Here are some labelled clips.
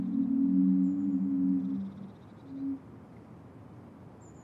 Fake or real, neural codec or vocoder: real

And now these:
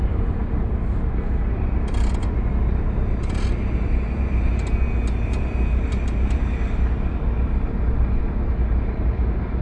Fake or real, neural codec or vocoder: real